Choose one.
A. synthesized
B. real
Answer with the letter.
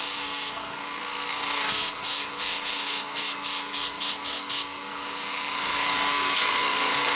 A